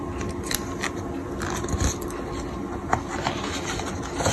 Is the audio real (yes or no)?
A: yes